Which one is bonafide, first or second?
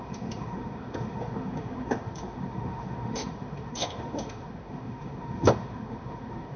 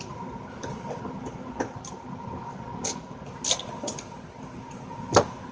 second